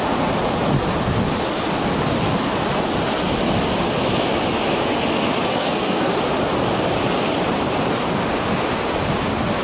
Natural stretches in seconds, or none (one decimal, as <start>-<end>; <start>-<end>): 0.0-5.5; 6.1-9.6